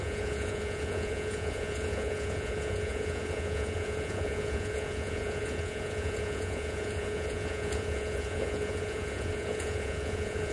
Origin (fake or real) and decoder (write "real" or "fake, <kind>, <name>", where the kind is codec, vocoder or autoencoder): fake, vocoder, Vocos